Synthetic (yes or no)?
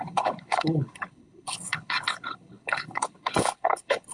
yes